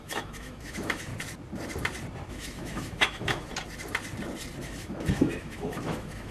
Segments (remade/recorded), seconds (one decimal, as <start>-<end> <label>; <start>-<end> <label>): 0.0-1.1 remade; 1.1-2.3 recorded; 2.3-3.5 remade; 3.5-4.6 recorded; 4.6-6.3 remade